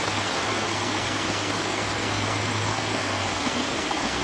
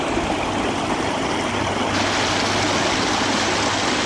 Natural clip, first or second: second